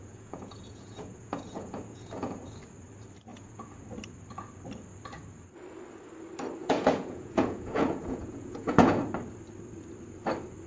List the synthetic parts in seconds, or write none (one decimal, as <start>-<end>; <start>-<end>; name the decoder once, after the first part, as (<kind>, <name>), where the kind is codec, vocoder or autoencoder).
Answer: 0.0-2.6 (vocoder, Vocos); 3.3-3.8; 6.6-9.1